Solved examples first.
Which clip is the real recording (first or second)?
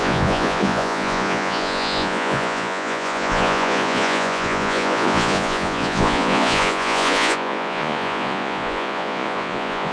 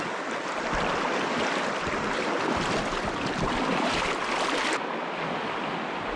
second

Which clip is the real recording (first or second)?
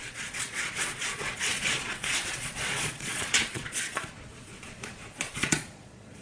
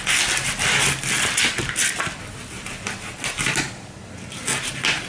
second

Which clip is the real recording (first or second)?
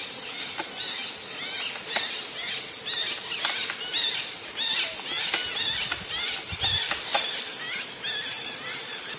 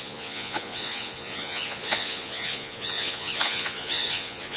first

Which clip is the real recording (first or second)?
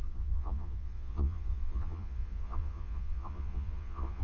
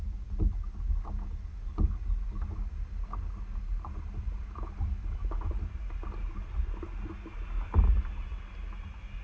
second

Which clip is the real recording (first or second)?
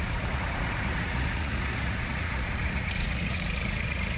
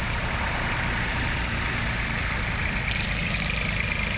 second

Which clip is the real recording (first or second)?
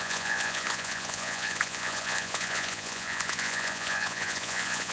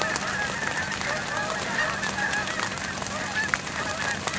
second